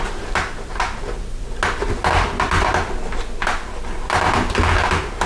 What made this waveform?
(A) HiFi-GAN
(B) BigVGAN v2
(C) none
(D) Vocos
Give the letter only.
C